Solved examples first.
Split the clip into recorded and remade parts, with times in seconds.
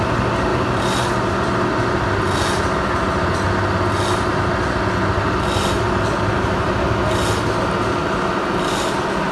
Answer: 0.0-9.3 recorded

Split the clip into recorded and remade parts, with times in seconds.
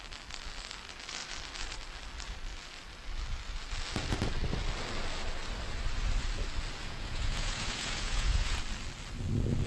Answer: 0.0-6.8 recorded; 6.8-8.6 remade; 8.6-9.7 recorded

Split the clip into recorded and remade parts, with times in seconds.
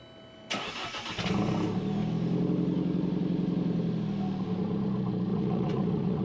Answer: 0.0-5.3 recorded; 5.3-6.2 remade